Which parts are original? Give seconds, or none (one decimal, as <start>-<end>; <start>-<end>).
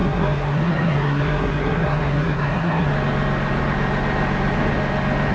2.9-5.3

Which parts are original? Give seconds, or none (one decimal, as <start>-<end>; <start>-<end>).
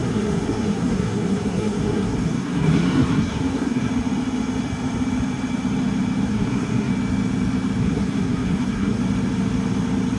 3.9-6.3; 6.9-7.8; 9.0-10.2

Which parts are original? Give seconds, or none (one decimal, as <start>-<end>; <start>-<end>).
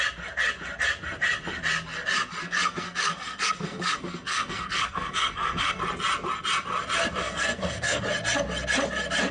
0.0-2.4; 5.8-7.2; 8.0-9.3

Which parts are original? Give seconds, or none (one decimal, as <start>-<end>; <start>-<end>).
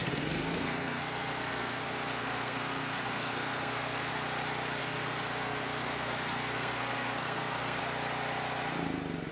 4.1-4.8; 7.8-9.3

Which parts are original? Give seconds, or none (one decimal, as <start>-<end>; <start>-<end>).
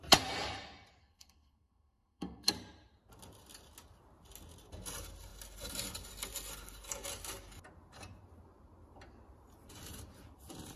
0.0-1.0; 2.5-10.8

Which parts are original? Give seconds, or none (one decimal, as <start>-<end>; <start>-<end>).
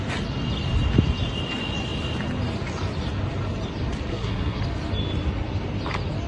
0.0-4.1; 4.6-6.3